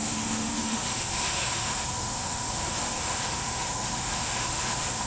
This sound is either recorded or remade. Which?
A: remade